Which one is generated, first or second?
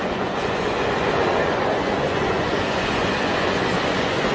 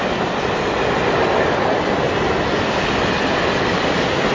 first